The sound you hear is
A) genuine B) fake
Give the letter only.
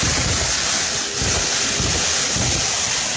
A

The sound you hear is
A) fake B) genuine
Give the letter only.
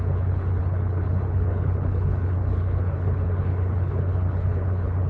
A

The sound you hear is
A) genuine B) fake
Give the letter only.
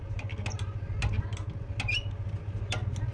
A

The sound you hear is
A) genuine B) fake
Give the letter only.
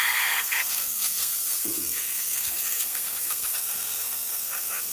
B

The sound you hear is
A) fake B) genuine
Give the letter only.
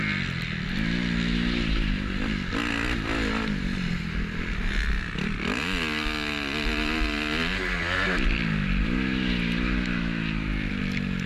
B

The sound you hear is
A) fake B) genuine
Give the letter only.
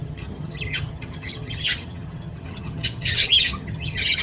A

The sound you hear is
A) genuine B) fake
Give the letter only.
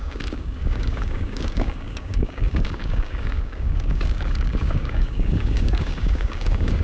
B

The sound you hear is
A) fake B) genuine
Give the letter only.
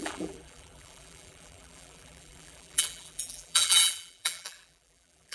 A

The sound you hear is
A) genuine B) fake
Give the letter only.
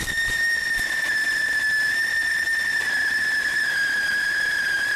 A